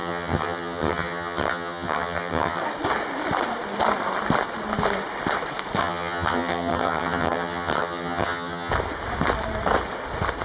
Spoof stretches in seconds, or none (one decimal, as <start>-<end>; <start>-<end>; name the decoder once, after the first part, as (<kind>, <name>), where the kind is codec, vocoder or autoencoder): 0.0-2.6 (vocoder, HiFi-GAN); 5.8-8.7